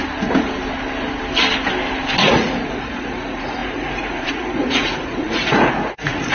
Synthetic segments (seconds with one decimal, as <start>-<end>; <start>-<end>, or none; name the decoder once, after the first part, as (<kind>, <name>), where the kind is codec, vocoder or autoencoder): 2.2-6.3 (vocoder, Vocos)